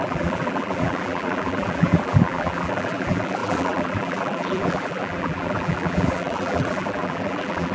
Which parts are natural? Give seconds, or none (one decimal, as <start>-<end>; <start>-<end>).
none